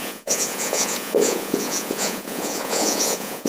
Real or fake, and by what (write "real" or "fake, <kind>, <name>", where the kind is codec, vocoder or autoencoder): fake, vocoder, Vocos